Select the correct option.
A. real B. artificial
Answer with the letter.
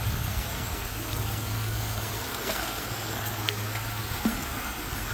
B